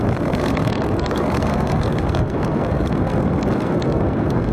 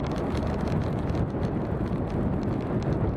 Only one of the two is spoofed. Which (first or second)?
first